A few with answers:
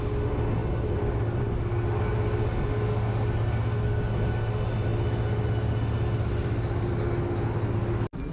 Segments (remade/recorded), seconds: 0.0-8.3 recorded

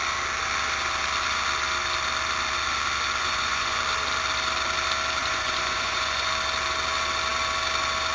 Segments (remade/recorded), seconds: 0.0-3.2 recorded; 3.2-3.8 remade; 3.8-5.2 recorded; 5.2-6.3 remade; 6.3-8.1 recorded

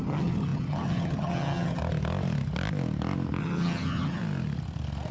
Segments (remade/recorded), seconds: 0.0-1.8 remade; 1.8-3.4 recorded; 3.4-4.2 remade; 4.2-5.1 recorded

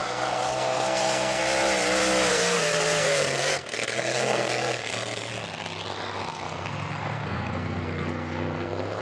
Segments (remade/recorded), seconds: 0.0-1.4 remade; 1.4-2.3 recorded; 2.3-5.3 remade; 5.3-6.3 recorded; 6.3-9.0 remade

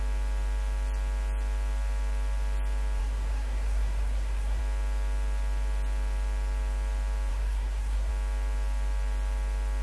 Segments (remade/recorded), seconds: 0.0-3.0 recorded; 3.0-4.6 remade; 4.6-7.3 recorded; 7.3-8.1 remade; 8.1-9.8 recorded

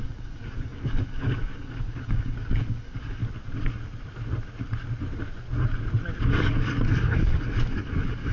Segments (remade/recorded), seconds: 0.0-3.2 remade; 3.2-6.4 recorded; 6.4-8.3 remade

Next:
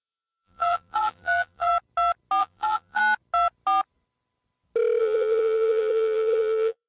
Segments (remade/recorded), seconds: 0.0-1.7 remade; 1.7-2.4 recorded; 2.4-3.0 remade; 3.0-5.0 recorded; 5.0-6.9 remade

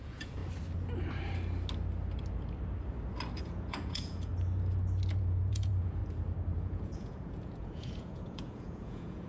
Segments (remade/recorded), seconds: 0.0-0.4 remade; 0.4-3.4 recorded; 3.4-4.3 remade; 4.3-5.2 recorded; 5.2-6.0 remade; 6.0-6.6 recorded; 6.6-9.3 remade